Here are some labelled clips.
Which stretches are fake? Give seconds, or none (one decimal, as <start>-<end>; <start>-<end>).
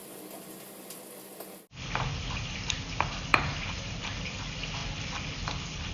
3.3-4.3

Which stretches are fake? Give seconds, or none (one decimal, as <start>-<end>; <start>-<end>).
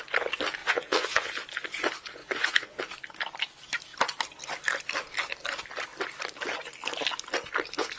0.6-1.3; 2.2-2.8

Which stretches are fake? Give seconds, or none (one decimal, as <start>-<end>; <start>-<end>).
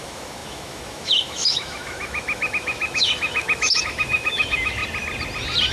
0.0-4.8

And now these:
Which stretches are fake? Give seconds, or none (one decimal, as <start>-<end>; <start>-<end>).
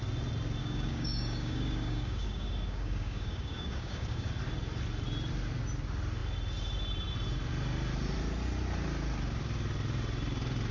0.6-4.3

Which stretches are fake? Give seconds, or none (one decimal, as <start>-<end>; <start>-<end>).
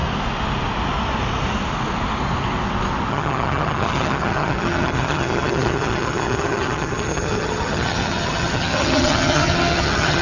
3.1-10.2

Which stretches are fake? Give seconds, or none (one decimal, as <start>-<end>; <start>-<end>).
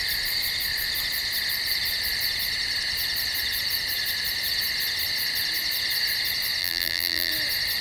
6.6-7.3